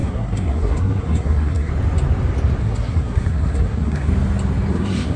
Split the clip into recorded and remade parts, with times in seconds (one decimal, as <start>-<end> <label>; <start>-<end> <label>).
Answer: 0.0-1.7 remade; 1.7-2.6 recorded; 2.6-4.1 remade; 4.1-4.7 recorded; 4.7-5.2 remade